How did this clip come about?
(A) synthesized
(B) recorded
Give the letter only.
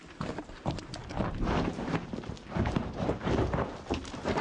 A